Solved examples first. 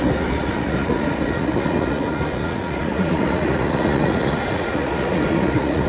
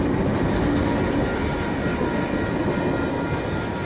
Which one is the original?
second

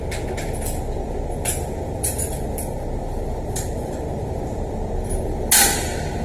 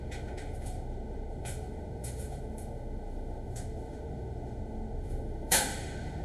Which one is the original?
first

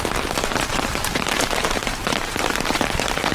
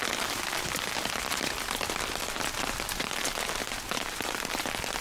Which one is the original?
second